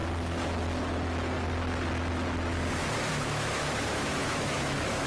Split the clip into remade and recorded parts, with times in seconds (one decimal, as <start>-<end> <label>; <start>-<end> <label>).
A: 0.0-3.1 recorded; 3.1-5.1 remade